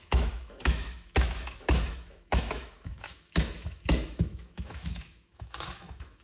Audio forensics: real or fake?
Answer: fake